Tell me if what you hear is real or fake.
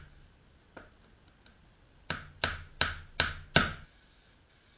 real